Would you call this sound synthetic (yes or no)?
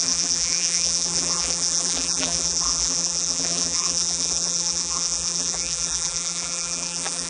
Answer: yes